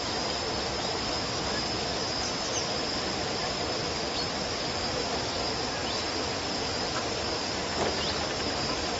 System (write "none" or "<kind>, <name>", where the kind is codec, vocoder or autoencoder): none